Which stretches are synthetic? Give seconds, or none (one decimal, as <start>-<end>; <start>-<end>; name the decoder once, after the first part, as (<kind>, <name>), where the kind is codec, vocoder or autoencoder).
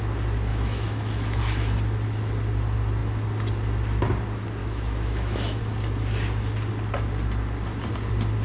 0.5-1.4 (autoencoder, DAC-VAE); 4.6-5.6